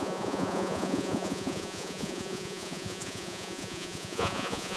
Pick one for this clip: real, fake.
fake